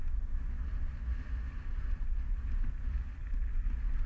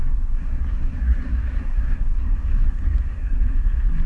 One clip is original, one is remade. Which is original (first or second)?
first